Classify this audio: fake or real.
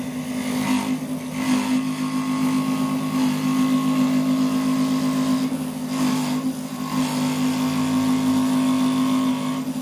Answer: real